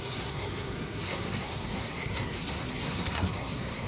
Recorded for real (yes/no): no